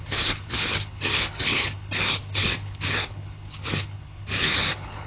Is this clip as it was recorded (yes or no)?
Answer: no